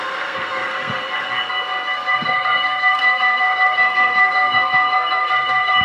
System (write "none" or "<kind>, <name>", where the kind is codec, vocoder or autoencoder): codec, SNAC